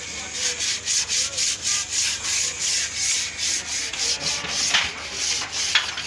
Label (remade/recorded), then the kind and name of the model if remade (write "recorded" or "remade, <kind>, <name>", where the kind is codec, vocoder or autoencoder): recorded